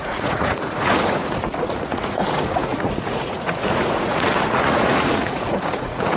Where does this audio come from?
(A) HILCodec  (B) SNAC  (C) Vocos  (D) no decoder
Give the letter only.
C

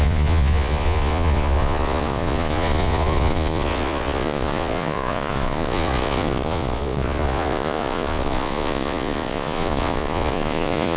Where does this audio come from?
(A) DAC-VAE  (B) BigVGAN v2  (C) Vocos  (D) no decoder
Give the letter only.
C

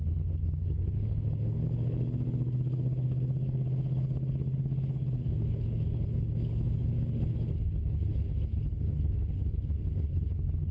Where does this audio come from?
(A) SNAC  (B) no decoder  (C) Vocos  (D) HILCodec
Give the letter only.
D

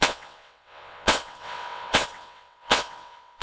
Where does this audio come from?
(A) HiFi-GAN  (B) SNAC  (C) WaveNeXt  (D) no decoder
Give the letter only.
C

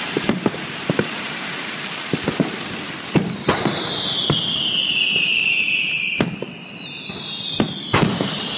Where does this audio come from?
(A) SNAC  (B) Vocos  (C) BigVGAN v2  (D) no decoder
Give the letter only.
D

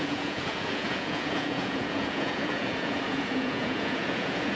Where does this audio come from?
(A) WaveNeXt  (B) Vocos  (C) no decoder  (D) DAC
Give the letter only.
B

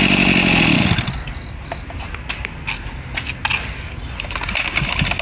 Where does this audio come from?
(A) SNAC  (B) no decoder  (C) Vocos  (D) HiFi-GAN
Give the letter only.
B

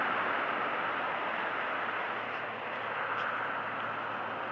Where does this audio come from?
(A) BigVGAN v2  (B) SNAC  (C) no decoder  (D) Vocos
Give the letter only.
C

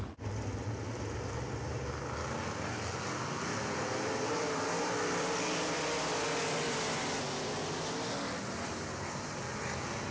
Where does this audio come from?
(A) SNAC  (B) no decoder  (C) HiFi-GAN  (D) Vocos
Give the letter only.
B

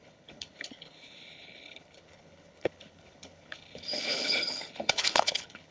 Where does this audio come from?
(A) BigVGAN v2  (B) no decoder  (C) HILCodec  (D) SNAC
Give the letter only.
C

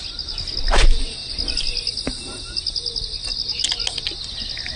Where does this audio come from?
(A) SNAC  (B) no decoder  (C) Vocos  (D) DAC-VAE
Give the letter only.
B